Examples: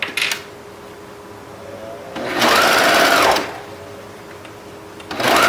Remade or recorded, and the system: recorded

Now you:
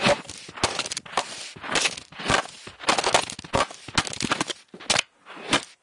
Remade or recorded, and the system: recorded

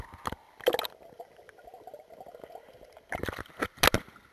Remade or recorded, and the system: recorded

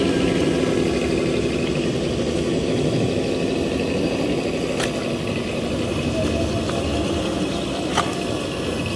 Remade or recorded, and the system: recorded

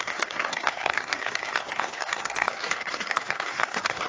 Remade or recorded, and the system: remade, codec, SNAC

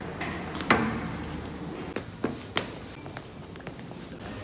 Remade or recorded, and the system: recorded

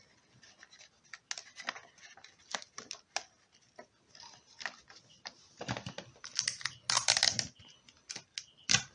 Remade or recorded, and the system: recorded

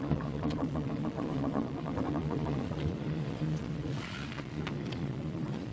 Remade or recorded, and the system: remade, vocoder, Vocos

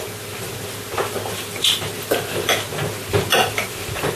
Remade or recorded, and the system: recorded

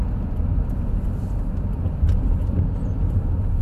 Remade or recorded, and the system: recorded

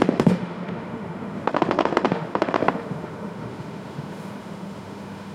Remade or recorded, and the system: remade, autoencoder, DAC-VAE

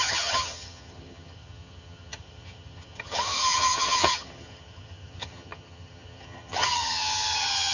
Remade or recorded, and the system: remade, vocoder, HiFi-GAN